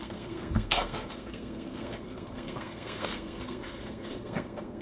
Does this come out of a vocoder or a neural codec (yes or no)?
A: yes